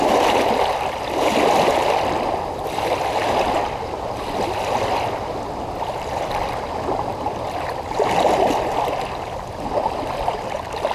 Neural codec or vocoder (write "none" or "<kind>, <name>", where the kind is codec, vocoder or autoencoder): none